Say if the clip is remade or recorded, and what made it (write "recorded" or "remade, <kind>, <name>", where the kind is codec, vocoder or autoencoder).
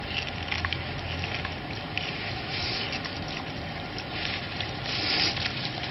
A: recorded